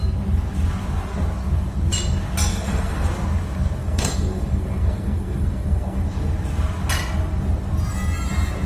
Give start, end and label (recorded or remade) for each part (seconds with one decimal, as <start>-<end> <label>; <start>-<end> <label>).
0.0-2.5 recorded; 2.5-3.1 remade; 3.1-3.8 recorded; 3.8-6.0 remade; 6.0-8.7 recorded